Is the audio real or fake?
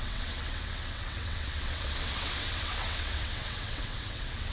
fake